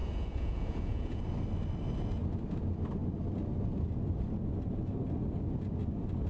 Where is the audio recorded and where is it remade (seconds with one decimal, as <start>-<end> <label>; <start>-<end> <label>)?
0.0-1.2 remade; 1.2-6.3 recorded

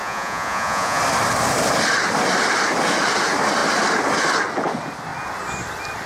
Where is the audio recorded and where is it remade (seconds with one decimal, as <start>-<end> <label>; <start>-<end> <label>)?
0.0-1.0 remade; 1.0-6.1 recorded